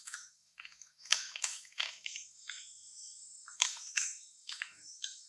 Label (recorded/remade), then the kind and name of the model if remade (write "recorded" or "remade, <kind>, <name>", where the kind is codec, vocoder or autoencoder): remade, autoencoder, DAC-VAE